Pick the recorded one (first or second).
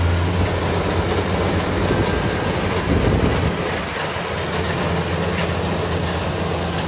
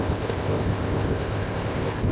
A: first